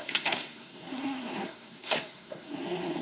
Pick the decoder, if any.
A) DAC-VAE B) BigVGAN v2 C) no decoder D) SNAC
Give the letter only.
D